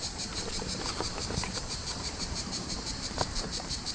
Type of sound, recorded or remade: remade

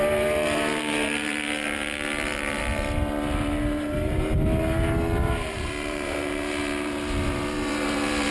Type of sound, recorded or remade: remade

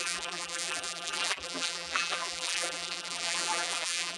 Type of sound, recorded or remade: remade